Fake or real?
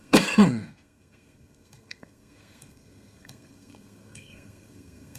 fake